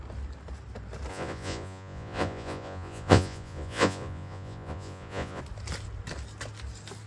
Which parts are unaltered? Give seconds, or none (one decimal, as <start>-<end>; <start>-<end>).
0.0-1.1; 5.4-7.1